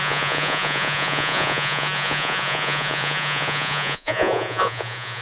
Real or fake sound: fake